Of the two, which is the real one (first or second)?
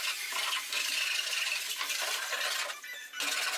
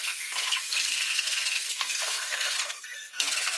first